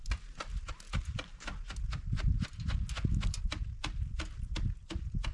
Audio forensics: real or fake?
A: real